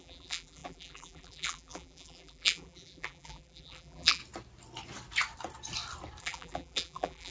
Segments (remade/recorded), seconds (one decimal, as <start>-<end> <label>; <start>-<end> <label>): 0.0-4.2 remade; 4.2-6.2 recorded; 6.2-7.3 remade

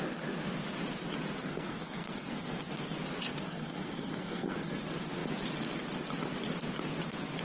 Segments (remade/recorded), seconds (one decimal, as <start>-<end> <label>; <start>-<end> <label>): 0.0-1.4 recorded; 1.4-2.5 remade; 2.5-3.3 recorded; 3.3-4.8 remade; 4.8-7.4 recorded

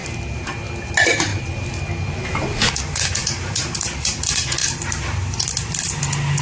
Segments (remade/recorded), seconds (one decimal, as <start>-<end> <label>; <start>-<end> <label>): 0.0-0.5 remade; 0.5-1.3 recorded; 1.3-1.9 remade; 1.9-3.2 recorded; 3.2-4.1 remade; 4.1-6.4 recorded